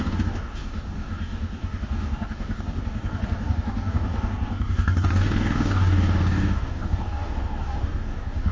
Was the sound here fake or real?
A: fake